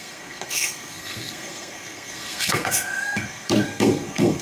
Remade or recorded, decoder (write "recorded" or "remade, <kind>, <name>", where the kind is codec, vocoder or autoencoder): remade, codec, SNAC